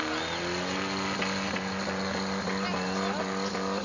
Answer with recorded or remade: recorded